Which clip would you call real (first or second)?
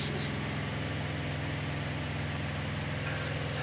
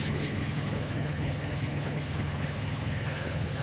first